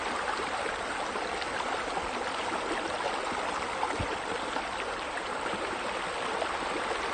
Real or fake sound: real